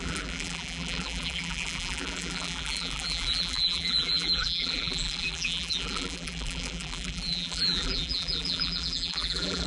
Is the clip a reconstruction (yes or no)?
yes